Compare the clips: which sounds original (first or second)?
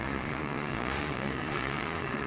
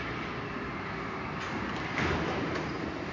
second